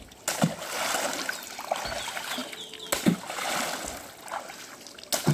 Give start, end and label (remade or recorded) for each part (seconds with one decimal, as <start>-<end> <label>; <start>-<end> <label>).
0.0-5.3 recorded